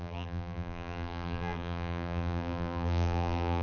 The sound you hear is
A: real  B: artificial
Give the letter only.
B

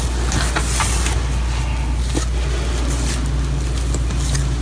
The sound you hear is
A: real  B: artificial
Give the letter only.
A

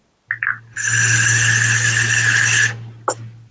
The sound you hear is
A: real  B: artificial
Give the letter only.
A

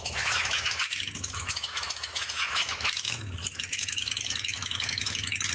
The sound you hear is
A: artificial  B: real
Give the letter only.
A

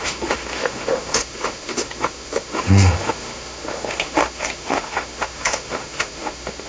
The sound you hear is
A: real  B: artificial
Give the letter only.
B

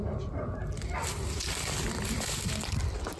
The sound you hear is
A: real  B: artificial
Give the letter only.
A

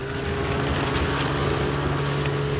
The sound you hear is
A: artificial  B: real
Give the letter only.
B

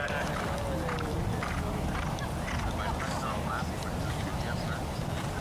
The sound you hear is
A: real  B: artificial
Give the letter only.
A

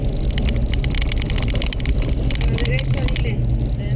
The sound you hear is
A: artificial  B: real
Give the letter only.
B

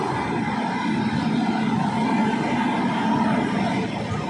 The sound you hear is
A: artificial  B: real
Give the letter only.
B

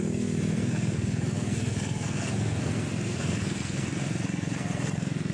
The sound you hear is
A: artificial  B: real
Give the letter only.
A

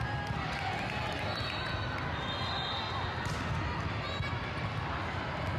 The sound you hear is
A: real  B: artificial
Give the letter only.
A